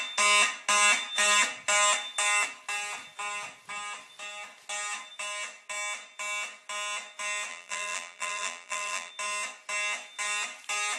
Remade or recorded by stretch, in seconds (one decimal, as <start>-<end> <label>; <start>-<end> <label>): 0.0-7.5 recorded; 7.5-9.1 remade; 9.1-11.0 recorded